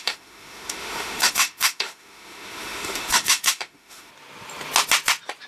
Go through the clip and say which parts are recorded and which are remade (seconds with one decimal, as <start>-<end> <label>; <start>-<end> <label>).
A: 0.0-4.1 remade; 4.1-5.5 recorded